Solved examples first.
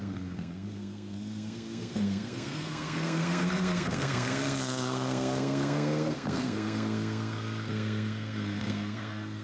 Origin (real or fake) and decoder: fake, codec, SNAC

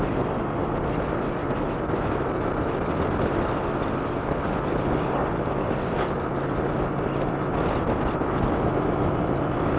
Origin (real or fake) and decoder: real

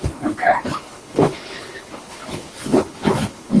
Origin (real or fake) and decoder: fake, codec, HILCodec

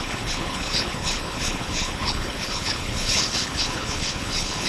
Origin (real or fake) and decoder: fake, codec, HILCodec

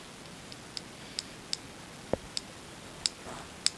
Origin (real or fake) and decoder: real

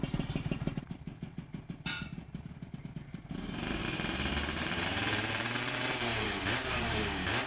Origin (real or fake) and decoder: fake, vocoder, BigVGAN v2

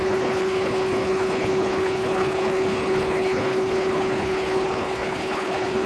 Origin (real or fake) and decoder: fake, codec, HILCodec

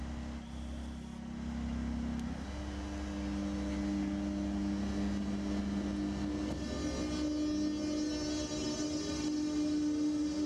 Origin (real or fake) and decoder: real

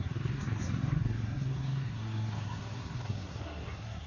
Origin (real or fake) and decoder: fake, codec, SNAC